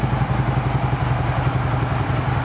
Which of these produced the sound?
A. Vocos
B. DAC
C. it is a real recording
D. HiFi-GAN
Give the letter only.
C